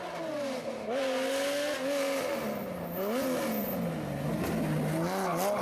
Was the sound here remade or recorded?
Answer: recorded